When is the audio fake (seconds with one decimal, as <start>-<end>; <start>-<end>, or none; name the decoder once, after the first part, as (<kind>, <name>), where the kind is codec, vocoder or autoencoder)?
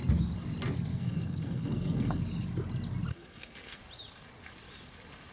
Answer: 0.9-2.2 (codec, SNAC); 3.1-3.8